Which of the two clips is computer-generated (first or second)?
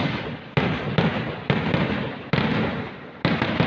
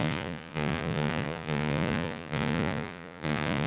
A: second